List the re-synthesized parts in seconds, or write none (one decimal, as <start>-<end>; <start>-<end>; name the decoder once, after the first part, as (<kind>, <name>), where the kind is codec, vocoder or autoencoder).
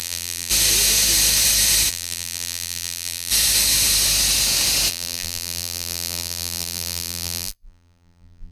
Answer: 0.0-0.5 (vocoder, BigVGAN v2); 1.9-3.3; 4.9-8.5